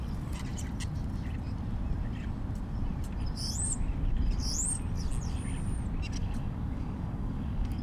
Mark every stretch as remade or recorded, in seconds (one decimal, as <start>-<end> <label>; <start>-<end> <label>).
0.0-6.2 recorded; 6.2-7.8 remade